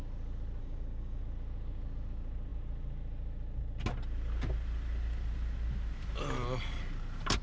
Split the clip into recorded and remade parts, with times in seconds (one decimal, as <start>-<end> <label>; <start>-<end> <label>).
0.0-0.6 recorded; 0.6-1.2 remade; 1.2-7.4 recorded